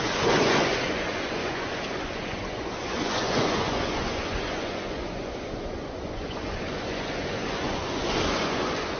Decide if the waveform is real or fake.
fake